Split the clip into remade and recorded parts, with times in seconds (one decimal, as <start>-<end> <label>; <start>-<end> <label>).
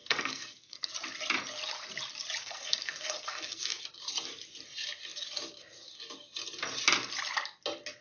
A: 0.0-0.9 remade; 0.9-2.4 recorded; 2.4-3.8 remade; 3.8-8.0 recorded